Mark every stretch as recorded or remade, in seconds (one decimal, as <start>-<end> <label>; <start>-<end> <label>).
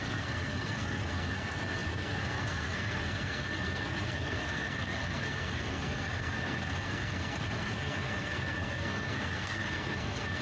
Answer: 0.0-10.4 remade